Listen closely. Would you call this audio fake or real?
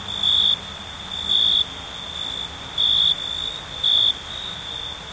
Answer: real